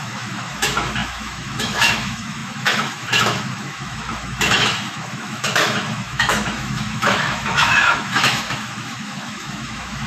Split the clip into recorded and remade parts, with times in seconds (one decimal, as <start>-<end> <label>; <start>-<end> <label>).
0.0-10.1 remade